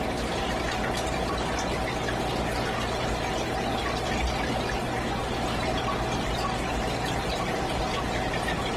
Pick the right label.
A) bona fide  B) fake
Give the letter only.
A